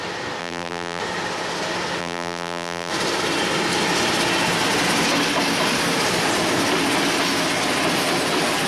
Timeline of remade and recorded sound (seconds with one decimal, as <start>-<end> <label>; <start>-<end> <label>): 0.0-0.4 recorded; 0.4-1.0 remade; 1.0-2.0 recorded; 2.0-2.9 remade; 2.9-8.7 recorded